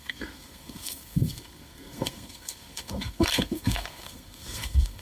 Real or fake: fake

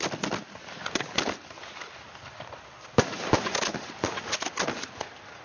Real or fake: real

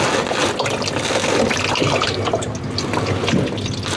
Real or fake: real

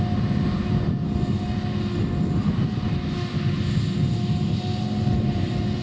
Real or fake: real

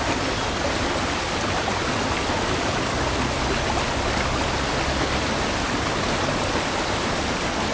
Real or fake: real